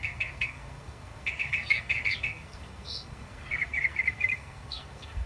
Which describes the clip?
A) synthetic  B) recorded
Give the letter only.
A